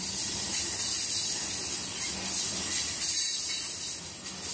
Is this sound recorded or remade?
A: recorded